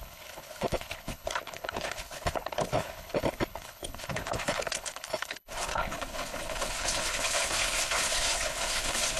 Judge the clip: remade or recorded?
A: remade